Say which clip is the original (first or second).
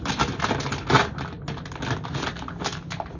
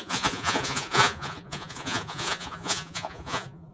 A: first